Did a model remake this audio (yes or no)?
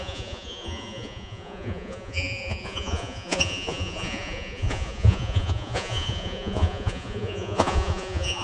yes